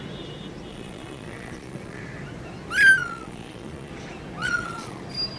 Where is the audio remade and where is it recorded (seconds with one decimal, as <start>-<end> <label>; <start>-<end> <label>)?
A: 0.0-0.7 recorded; 0.7-2.0 remade; 2.0-3.0 recorded; 3.0-3.9 remade; 3.9-4.4 recorded; 4.4-5.0 remade; 5.0-5.4 recorded